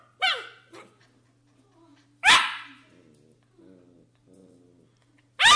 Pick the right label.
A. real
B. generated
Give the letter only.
A